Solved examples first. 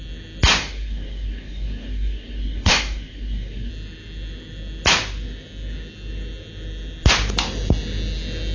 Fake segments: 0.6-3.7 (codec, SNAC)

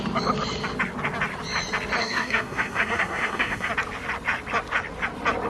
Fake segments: 2.0-3.7 (codec, SNAC)

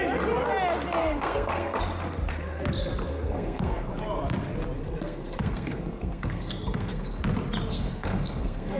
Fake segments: 1.0-1.8 (codec, SNAC); 3.1-3.9; 4.8-7.2; 7.7-8.8

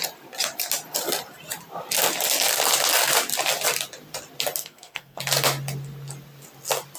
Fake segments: 4.6-5.2 (codec, SNAC)

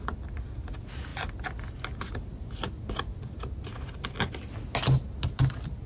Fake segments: none

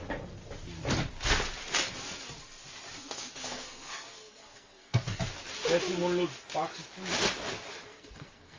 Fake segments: 3.0-5.2 (codec, SNAC); 7.7-8.6

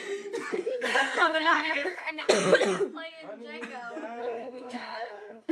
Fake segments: 0.5-2.3 (codec, SNAC); 4.2-5.5